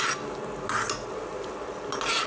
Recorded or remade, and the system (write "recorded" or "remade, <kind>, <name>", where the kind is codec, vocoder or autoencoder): recorded